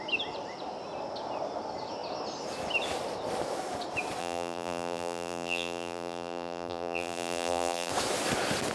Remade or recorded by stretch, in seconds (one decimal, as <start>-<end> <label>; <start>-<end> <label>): 0.0-4.2 recorded; 4.2-7.9 remade; 7.9-8.7 recorded